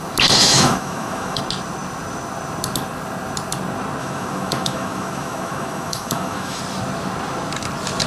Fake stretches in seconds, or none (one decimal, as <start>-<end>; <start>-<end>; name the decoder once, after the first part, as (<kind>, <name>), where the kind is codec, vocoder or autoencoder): 0.4-1.4 (autoencoder, DAC-VAE); 4.0-6.6